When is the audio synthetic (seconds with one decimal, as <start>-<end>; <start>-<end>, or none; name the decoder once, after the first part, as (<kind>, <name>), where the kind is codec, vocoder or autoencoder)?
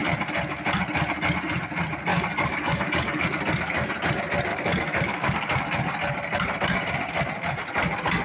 2.1-3.2 (codec, DAC); 4.5-5.6